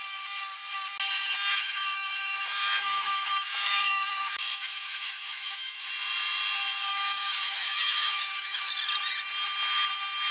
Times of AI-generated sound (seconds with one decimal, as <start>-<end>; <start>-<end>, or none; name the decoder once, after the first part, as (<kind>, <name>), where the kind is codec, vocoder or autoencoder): 1.5-5.9 (autoencoder, DAC-VAE); 6.9-8.7